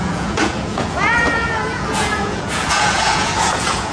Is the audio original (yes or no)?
no